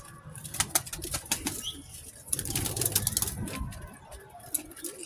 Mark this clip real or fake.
real